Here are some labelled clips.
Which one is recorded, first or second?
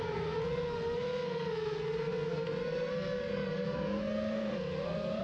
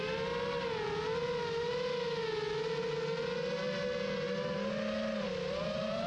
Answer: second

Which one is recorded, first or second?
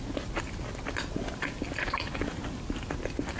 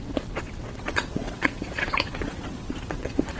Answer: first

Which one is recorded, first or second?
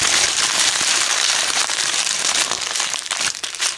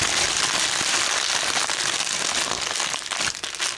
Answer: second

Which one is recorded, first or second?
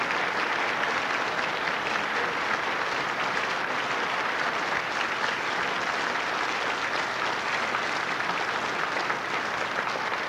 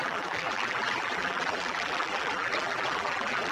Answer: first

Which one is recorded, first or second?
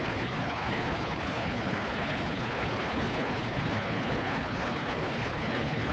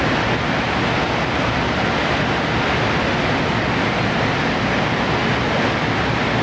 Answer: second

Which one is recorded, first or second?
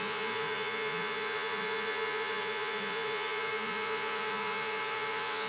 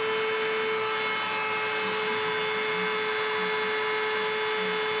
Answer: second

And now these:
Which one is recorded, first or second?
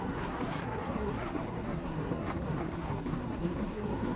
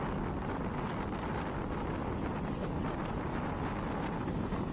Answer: second